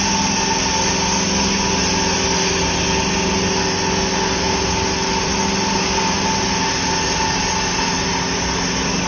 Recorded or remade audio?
recorded